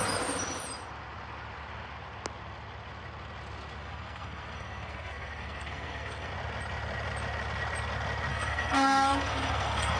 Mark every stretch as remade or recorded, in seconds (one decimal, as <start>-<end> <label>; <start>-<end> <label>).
0.0-3.8 recorded; 3.8-6.3 remade; 6.3-8.3 recorded; 8.3-10.0 remade